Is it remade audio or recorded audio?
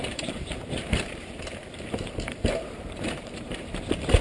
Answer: remade